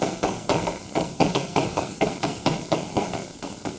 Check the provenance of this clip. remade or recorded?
remade